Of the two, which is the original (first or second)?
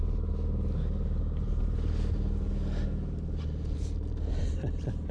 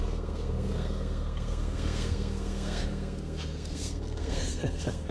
first